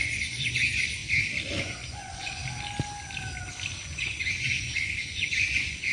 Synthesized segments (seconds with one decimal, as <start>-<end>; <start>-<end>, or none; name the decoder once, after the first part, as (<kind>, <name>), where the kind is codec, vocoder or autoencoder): 0.0-1.0 (vocoder, Vocos); 1.6-2.4; 3.8-5.9